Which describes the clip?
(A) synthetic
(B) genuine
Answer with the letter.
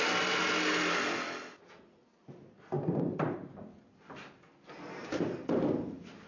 B